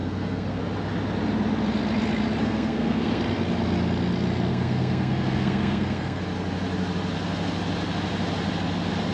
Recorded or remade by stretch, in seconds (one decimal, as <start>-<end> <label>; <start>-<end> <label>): 0.0-0.6 remade; 0.6-2.4 recorded; 2.4-3.2 remade; 3.2-4.5 recorded; 4.5-6.2 remade; 6.2-9.1 recorded